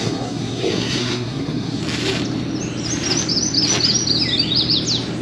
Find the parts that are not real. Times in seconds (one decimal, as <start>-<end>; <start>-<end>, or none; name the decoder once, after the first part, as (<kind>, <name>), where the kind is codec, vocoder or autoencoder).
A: 0.0-1.8 (codec, SNAC)